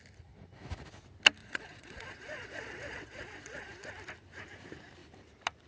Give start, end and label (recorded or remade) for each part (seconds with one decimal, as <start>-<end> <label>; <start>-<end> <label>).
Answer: 0.0-1.4 recorded; 1.4-3.9 remade; 3.9-5.7 recorded